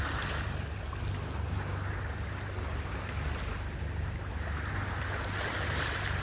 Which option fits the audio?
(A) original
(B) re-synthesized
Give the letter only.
A